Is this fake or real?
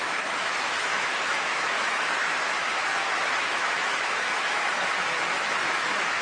fake